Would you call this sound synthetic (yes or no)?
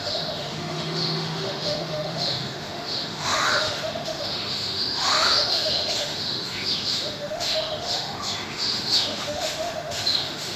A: yes